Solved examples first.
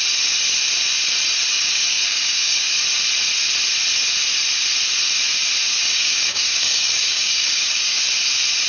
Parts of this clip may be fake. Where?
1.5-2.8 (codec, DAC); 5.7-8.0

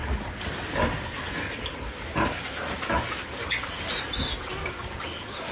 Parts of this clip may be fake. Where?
3.4-3.9 (codec, DAC); 4.6-5.5

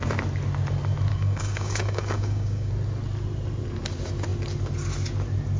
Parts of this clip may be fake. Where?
1.1-2.7 (codec, DAC)

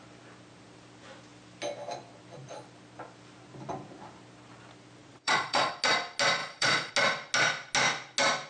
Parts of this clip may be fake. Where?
5.0-5.7 (vocoder, Vocos); 6.4-6.9

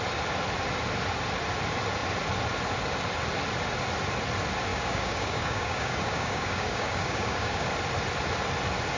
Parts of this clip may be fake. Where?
4.7-7.7 (codec, DAC)

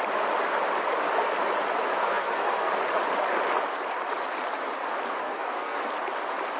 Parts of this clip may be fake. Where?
2.0-2.7 (codec, SNAC); 5.2-5.8

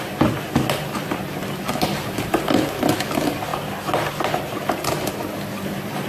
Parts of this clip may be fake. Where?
none

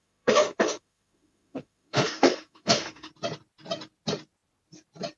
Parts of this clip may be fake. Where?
0.0-3.1 (autoencoder, DAC-VAE)